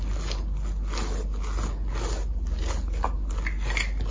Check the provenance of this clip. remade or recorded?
recorded